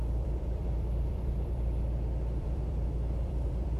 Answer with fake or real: fake